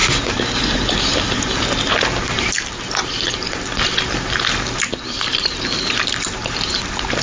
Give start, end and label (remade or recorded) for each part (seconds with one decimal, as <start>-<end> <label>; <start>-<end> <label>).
0.0-5.3 recorded; 5.3-6.0 remade; 6.0-7.2 recorded